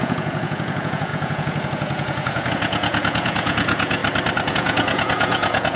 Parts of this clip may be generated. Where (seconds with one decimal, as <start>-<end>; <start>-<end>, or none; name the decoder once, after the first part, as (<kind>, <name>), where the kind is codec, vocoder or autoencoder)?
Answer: 0.0-4.0 (vocoder, Vocos); 4.5-5.8